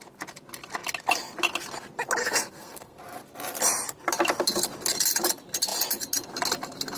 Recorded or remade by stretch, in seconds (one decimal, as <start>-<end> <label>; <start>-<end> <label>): 0.0-2.2 recorded; 2.2-3.0 remade; 3.0-7.0 recorded